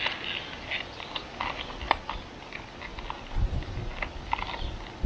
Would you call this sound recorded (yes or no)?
yes